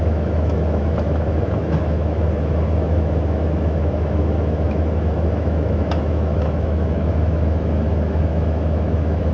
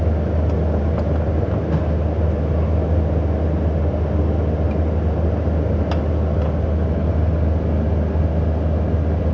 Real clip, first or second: second